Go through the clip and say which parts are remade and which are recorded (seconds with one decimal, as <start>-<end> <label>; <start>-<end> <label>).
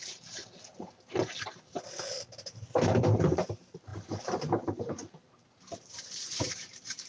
0.0-0.4 remade; 0.4-2.1 recorded; 2.1-7.1 remade